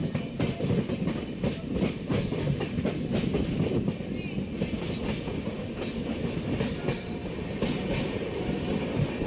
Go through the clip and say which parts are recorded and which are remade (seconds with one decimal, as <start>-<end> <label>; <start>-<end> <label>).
0.0-9.3 recorded